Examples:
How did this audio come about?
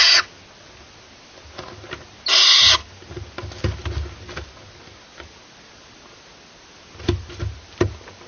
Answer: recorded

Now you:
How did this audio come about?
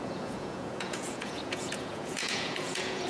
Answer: remade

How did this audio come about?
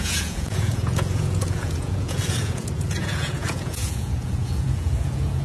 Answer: remade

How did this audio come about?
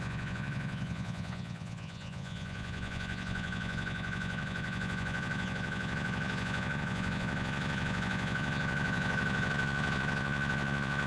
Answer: remade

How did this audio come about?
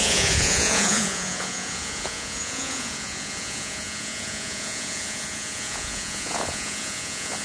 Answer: remade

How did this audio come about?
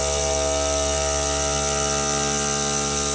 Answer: recorded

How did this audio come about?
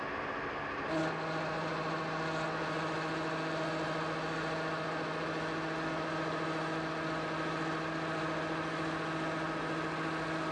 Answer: recorded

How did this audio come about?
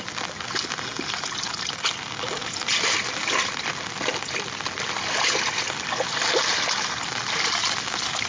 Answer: recorded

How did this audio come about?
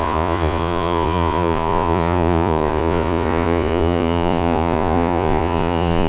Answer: remade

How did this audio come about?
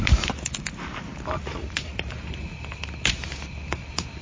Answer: recorded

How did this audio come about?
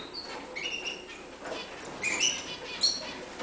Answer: recorded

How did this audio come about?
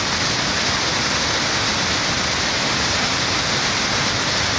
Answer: recorded